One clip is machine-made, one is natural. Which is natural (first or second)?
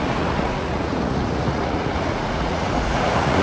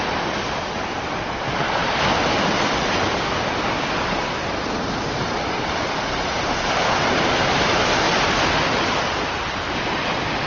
second